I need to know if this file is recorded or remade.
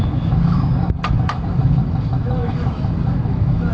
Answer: remade